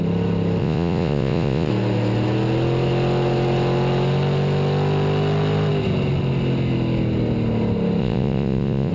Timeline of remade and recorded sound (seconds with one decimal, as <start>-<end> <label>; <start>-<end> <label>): 0.0-0.6 recorded; 0.6-1.7 remade; 1.7-8.0 recorded; 8.0-8.9 remade